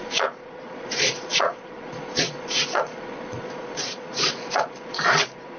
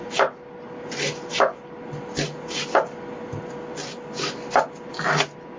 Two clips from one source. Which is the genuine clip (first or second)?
second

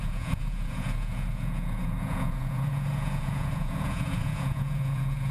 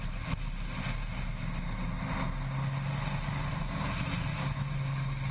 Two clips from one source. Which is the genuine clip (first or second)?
second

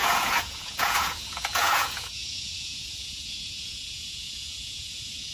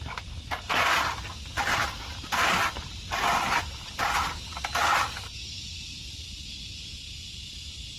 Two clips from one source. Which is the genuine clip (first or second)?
second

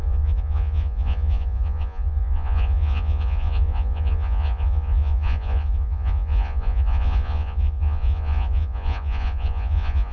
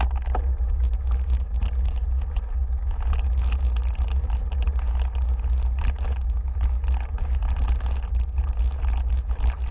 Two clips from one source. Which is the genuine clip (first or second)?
second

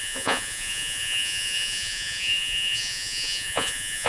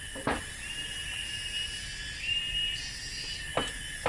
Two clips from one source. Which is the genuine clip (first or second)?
second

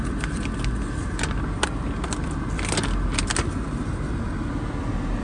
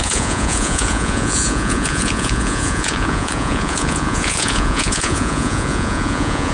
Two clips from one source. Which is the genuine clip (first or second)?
first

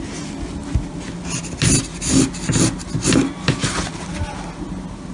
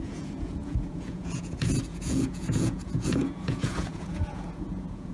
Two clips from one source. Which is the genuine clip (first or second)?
first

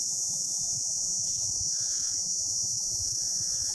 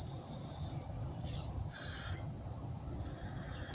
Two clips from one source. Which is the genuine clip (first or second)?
second